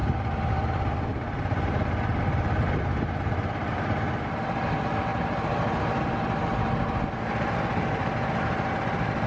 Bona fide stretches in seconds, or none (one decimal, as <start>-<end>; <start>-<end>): 0.5-1.1; 4.0-5.1; 6.0-9.3